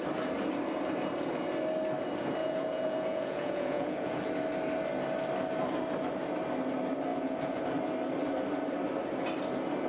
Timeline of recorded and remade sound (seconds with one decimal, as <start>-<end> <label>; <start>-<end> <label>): 0.0-2.4 recorded; 2.4-4.2 remade; 4.2-7.1 recorded; 7.1-7.6 remade; 7.6-9.9 recorded